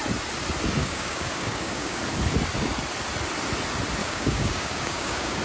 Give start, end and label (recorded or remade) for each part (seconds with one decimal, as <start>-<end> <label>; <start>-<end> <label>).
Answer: 0.0-0.8 recorded; 0.8-2.0 remade; 2.0-4.0 recorded; 4.0-5.4 remade